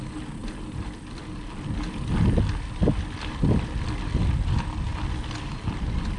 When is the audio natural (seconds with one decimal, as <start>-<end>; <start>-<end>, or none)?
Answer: 0.0-6.2